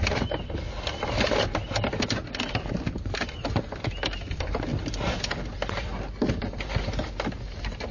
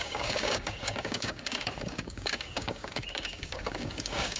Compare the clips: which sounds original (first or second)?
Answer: first